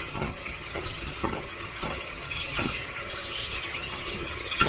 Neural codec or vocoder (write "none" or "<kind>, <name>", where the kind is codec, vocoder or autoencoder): vocoder, HiFi-GAN